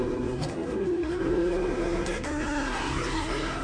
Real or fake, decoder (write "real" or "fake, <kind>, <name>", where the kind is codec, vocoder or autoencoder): fake, codec, SNAC